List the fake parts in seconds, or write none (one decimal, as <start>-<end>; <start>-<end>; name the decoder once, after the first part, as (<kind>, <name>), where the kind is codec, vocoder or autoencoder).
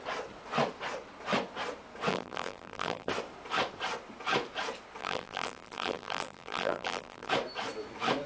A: 2.1-3.1 (vocoder, BigVGAN v2); 5.0-7.3